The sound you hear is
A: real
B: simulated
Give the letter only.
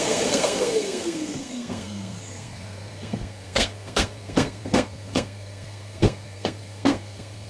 B